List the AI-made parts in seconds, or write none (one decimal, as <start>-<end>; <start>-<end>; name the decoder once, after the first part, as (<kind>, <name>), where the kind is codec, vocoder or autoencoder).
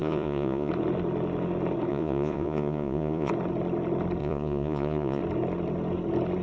0.0-0.7 (vocoder, Vocos); 1.9-3.3; 4.2-5.2